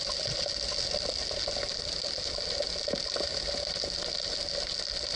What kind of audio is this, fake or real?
real